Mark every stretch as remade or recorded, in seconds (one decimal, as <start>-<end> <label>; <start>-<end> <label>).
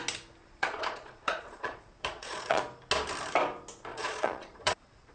0.0-0.4 recorded; 0.4-2.6 remade; 2.6-3.9 recorded; 3.9-5.1 remade